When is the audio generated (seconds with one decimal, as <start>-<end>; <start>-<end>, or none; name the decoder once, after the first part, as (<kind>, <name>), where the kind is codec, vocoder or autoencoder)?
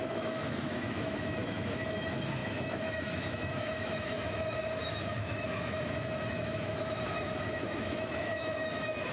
0.0-9.1 (autoencoder, DAC-VAE)